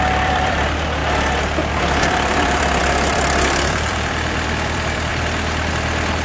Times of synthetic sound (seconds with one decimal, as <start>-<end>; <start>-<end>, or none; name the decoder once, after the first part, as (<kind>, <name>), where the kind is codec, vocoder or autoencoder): 0.0-1.0 (vocoder, BigVGAN v2); 1.7-5.1; 5.7-6.2